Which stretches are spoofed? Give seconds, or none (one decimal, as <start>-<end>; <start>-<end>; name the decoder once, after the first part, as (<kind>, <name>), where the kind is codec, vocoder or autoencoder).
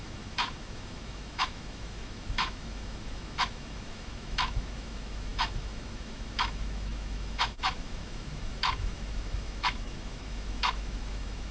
0.0-11.5 (autoencoder, DAC-VAE)